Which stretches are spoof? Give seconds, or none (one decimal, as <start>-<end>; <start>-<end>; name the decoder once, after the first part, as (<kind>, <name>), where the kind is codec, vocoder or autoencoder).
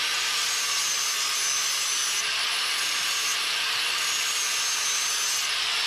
none